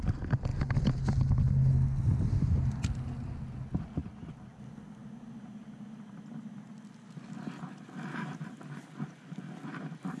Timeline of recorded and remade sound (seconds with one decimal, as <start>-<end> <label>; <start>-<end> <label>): 0.0-10.2 recorded